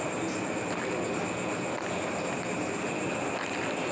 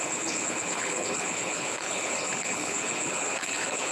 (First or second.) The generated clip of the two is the second